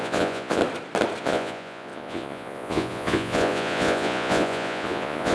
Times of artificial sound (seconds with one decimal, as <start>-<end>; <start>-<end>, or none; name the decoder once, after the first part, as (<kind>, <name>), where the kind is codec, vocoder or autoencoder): 0.0-0.6 (vocoder, Vocos); 1.2-5.3